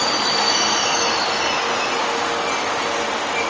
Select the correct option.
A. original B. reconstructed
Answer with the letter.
A